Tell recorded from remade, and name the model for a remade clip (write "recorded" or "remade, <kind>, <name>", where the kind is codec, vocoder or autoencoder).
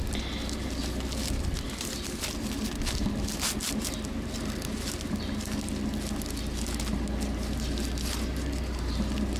recorded